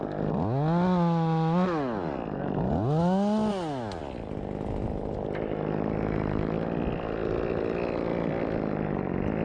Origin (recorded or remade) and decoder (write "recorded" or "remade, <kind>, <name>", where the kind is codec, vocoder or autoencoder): recorded